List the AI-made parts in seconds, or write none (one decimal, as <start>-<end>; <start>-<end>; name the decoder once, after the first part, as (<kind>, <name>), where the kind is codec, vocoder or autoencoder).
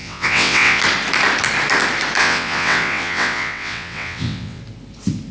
0.0-0.8 (vocoder, WaveNeXt); 2.2-4.6